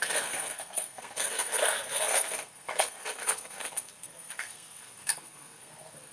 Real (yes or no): no